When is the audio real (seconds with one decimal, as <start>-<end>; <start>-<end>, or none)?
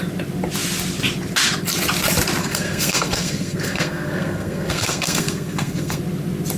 0.0-2.4; 6.0-6.6